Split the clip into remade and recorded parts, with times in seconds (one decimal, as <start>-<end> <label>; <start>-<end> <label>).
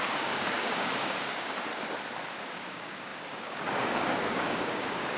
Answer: 0.0-1.7 remade; 1.7-2.4 recorded; 2.4-5.2 remade